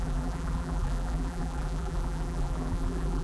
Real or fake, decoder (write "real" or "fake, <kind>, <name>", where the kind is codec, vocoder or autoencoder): fake, vocoder, BigVGAN v2